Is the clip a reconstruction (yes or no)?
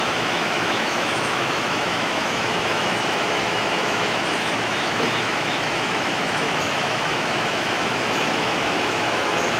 yes